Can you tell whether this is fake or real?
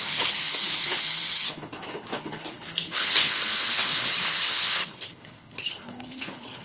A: fake